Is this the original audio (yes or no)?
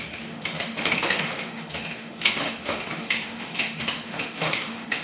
no